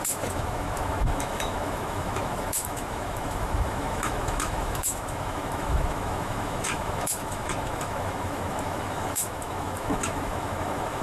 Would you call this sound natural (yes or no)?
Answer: no